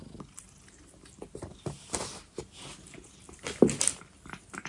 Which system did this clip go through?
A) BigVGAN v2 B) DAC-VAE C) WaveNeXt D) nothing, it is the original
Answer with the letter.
D